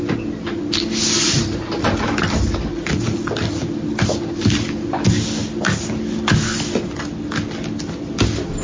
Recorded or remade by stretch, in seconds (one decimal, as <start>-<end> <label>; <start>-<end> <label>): 0.0-8.6 recorded